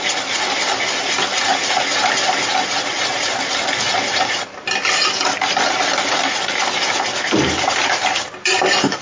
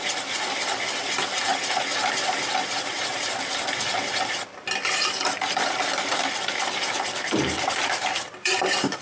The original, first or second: first